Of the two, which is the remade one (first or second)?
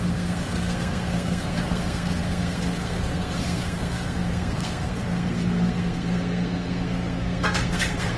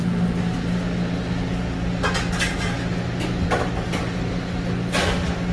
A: first